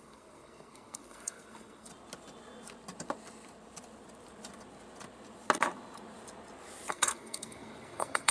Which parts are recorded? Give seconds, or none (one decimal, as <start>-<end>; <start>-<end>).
1.9-6.9